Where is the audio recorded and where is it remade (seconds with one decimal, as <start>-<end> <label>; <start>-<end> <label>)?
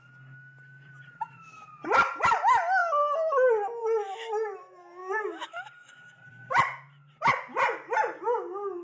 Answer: 0.0-8.8 recorded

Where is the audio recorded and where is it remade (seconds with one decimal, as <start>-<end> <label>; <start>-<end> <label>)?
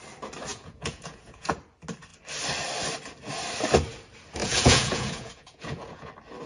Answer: 0.0-0.5 recorded; 0.5-1.5 remade; 1.5-4.4 recorded; 4.4-6.1 remade; 6.1-6.5 recorded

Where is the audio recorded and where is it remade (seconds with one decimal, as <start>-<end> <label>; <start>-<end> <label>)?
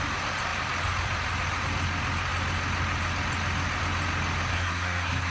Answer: 0.0-4.5 recorded; 4.5-5.3 remade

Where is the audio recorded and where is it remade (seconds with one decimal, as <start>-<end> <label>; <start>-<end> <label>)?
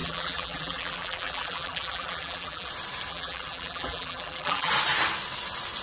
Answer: 0.0-2.7 remade; 2.7-3.1 recorded; 3.1-4.7 remade; 4.7-5.8 recorded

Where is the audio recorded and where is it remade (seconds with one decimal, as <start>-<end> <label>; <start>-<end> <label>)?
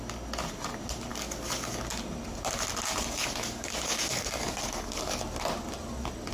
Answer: 0.0-1.1 recorded; 1.1-1.8 remade; 1.8-3.2 recorded; 3.2-5.2 remade; 5.2-6.3 recorded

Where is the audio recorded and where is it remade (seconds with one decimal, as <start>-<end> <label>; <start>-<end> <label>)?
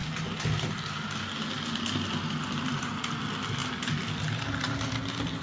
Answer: 0.0-5.4 recorded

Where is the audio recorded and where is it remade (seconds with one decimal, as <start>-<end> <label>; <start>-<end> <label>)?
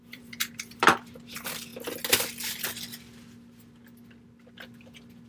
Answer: 0.0-1.7 remade; 1.7-5.3 recorded